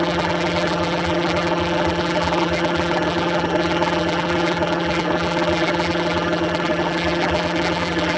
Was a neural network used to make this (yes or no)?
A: yes